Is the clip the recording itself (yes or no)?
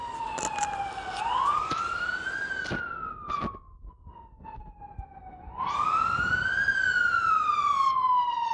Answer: yes